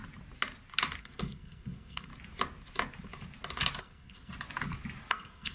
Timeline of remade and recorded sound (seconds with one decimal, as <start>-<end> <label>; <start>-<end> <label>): 0.0-1.0 recorded; 1.0-2.1 remade; 2.1-3.8 recorded; 3.8-4.3 remade; 4.3-5.1 recorded; 5.1-5.5 remade

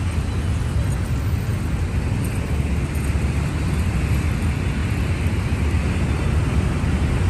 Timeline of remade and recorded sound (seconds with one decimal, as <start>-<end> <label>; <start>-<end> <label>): 0.0-7.3 recorded

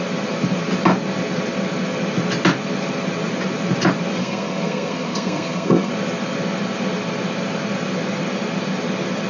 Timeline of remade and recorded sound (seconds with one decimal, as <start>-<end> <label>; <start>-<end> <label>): 0.0-4.2 recorded; 4.2-5.9 remade; 5.9-9.3 recorded

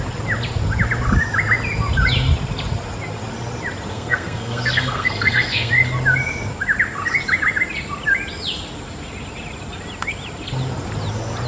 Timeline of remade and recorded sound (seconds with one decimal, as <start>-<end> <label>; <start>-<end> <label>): 0.0-3.9 recorded; 3.9-5.7 remade; 5.7-11.5 recorded

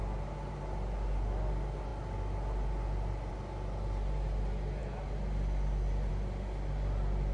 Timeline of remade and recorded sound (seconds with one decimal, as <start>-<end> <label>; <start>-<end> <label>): 0.0-7.3 recorded

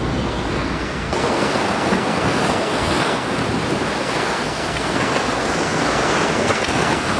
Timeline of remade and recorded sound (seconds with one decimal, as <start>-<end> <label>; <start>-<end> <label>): 0.0-3.4 remade; 3.4-4.0 recorded; 4.0-7.2 remade

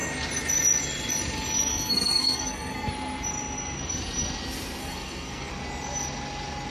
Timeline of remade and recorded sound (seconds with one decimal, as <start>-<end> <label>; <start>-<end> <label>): 0.0-1.7 recorded; 1.7-2.9 remade; 2.9-4.8 recorded; 4.8-5.5 remade; 5.5-6.7 recorded

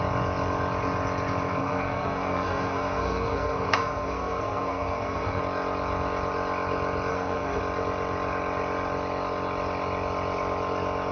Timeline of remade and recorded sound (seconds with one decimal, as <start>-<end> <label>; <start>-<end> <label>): 0.0-1.6 recorded; 1.6-5.4 remade; 5.4-7.1 recorded; 7.1-7.6 remade; 7.6-11.1 recorded